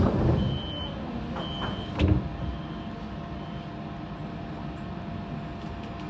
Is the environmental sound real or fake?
real